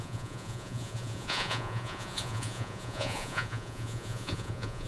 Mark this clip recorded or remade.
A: remade